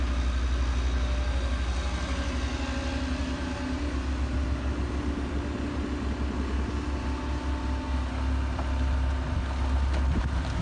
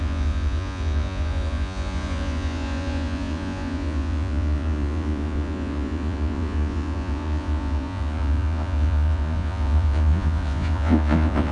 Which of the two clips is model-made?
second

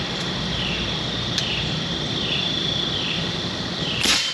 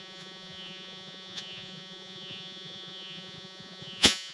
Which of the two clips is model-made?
second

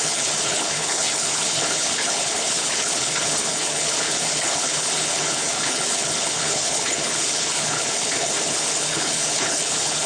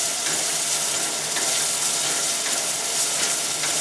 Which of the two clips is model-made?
first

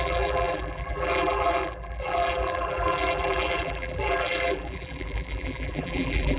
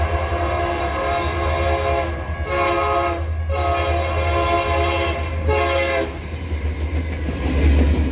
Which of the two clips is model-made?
first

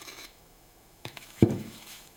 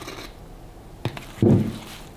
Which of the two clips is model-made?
first